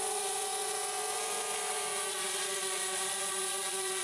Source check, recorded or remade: remade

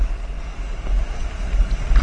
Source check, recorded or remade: recorded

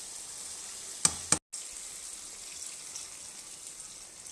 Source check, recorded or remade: recorded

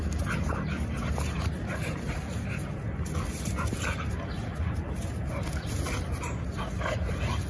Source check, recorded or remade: recorded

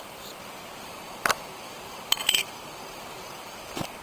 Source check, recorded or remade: remade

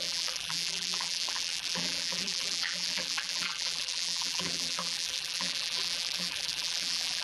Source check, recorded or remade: remade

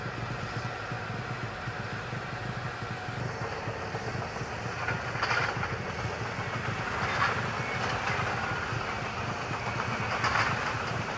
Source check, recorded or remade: recorded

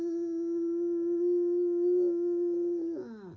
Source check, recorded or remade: recorded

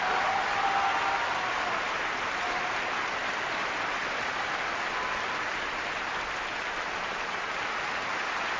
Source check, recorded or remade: recorded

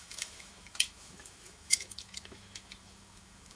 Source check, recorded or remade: remade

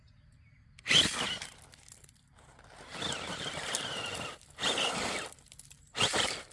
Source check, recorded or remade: recorded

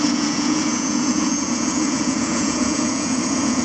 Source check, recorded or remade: remade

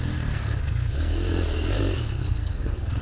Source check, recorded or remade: remade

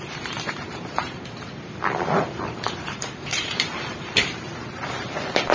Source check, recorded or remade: remade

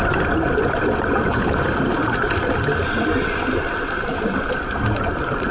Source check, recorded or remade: recorded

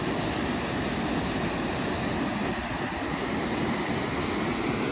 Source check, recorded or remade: recorded